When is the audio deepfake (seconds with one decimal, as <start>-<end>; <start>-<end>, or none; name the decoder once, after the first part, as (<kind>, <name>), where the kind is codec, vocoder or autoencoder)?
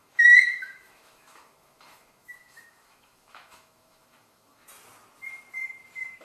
0.0-4.6 (autoencoder, DAC-VAE)